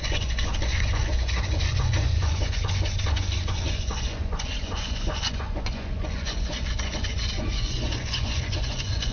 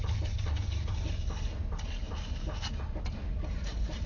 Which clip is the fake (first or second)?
first